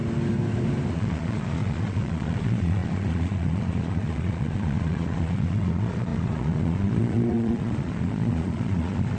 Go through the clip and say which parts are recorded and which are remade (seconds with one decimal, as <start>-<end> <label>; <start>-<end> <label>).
0.0-0.9 recorded; 0.9-9.2 remade